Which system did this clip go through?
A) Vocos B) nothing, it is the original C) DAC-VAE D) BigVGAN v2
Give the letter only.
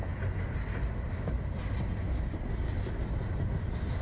B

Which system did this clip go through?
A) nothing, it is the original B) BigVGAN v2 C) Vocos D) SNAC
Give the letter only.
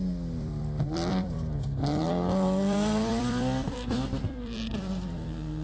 B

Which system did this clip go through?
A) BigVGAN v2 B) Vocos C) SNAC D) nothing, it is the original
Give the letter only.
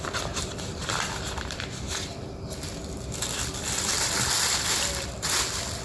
A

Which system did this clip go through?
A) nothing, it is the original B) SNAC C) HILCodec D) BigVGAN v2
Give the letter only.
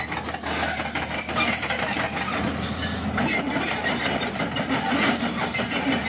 A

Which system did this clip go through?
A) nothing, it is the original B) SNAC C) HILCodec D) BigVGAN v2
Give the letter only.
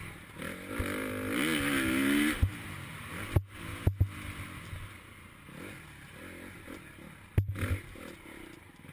A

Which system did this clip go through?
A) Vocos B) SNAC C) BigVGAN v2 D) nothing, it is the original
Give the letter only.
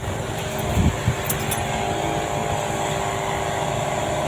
D